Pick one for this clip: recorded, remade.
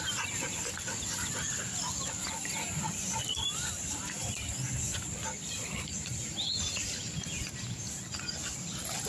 recorded